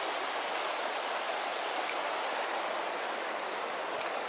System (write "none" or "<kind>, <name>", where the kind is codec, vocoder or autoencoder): none